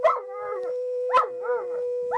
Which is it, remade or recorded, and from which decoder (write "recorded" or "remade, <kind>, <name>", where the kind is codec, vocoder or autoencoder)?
recorded